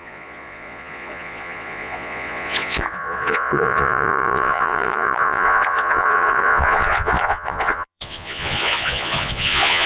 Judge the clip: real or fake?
fake